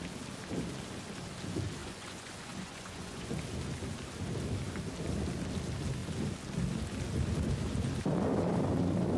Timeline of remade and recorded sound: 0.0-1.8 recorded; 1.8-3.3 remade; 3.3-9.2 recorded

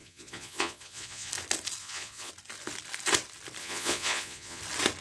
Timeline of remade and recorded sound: 0.0-1.3 remade; 1.3-1.8 recorded; 1.8-2.3 remade; 2.3-3.6 recorded; 3.6-4.6 remade; 4.6-5.0 recorded

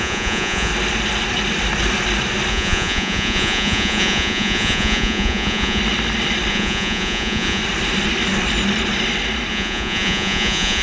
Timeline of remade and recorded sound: 0.0-0.7 remade; 0.7-2.5 recorded; 2.5-5.8 remade; 5.8-6.5 recorded; 6.5-7.6 remade; 7.6-9.5 recorded; 9.5-10.8 remade

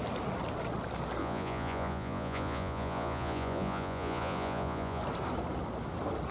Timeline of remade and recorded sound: 0.0-1.2 recorded; 1.2-5.0 remade; 5.0-6.3 recorded

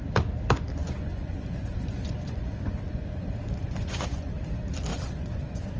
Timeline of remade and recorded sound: 0.0-0.8 recorded; 0.8-4.3 remade; 4.3-4.9 recorded; 4.9-5.8 remade

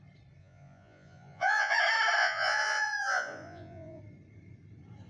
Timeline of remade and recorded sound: 0.0-0.4 recorded; 0.4-1.8 remade; 1.8-2.2 recorded; 2.2-4.0 remade; 4.0-5.1 recorded